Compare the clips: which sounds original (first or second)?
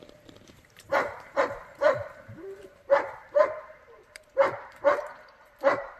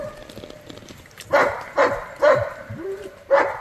second